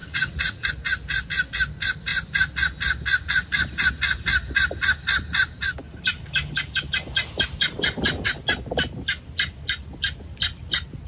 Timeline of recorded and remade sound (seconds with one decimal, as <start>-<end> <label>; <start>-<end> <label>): 0.0-0.7 remade; 0.7-11.1 recorded